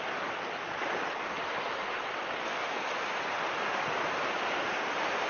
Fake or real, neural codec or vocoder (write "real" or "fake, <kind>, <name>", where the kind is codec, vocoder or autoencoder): real